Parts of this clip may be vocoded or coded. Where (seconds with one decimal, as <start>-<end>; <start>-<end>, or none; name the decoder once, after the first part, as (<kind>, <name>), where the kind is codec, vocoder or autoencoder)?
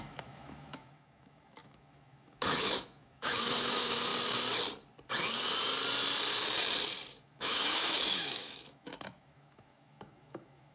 0.0-4.1 (autoencoder, DAC-VAE); 7.1-10.7